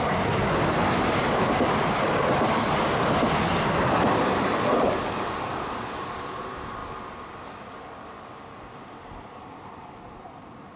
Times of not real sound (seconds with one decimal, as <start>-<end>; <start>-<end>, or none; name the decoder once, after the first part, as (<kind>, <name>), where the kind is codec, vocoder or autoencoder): none